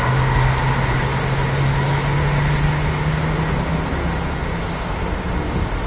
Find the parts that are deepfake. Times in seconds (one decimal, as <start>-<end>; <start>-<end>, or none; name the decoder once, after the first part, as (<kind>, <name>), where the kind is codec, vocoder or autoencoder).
none